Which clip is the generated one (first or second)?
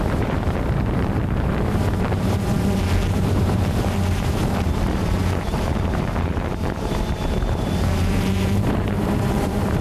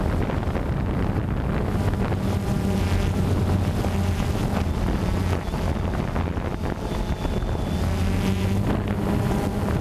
first